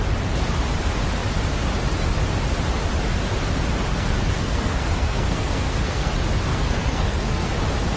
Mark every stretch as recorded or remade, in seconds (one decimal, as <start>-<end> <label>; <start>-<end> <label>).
0.0-3.9 recorded; 3.9-6.1 remade; 6.1-6.5 recorded; 6.5-7.5 remade; 7.5-8.0 recorded